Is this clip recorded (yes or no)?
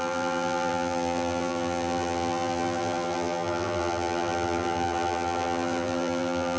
no